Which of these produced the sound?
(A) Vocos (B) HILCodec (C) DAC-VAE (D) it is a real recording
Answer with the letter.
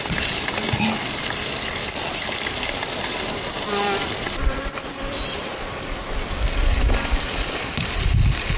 D